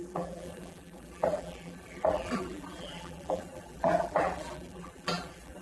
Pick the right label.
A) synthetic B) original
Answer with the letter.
A